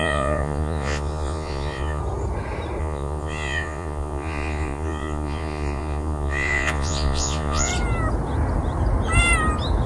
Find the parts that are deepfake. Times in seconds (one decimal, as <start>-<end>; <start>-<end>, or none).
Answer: 0.0-2.0; 2.8-7.7